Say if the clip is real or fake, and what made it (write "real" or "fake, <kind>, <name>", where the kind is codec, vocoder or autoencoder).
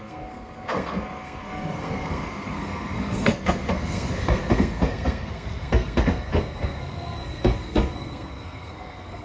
fake, codec, SNAC